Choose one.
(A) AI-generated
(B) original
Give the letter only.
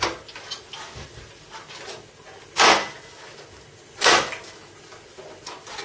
B